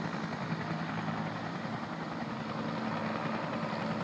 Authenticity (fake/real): real